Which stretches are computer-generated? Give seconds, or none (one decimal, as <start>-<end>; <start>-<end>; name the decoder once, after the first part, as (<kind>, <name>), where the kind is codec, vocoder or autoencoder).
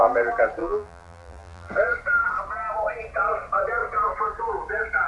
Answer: 0.6-1.7 (vocoder, BigVGAN v2)